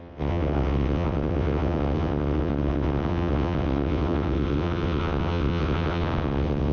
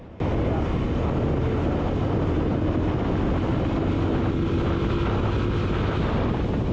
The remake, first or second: first